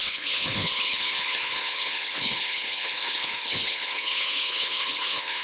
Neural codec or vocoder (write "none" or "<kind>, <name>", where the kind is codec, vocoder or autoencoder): codec, HILCodec